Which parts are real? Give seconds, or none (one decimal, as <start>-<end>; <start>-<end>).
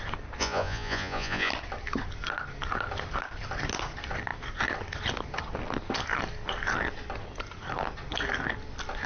0.0-0.4; 1.5-9.1